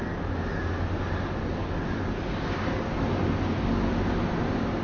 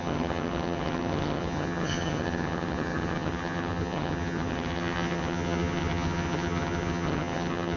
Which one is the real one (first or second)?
first